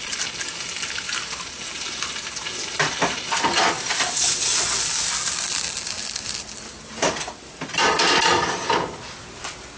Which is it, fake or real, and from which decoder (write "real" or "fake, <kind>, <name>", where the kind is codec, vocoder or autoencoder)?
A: real